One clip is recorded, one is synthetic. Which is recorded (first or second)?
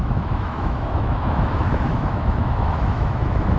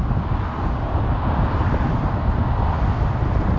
second